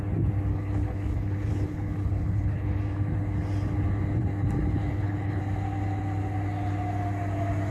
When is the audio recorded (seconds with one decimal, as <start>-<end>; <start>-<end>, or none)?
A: 0.0-0.5; 2.8-4.9; 5.4-7.7